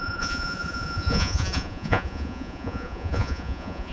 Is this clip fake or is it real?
fake